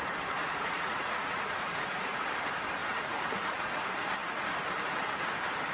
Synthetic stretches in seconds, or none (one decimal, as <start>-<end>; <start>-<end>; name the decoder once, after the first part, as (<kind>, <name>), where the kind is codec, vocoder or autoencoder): 0.4-2.3 (vocoder, Vocos); 2.8-3.7